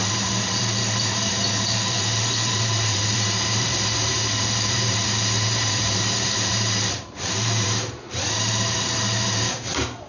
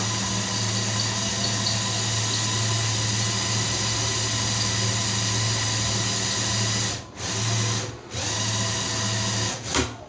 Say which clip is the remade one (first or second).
first